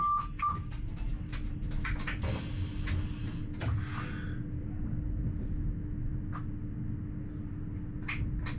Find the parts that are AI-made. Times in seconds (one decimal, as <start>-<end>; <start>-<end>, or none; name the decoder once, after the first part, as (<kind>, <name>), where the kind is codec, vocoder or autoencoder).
none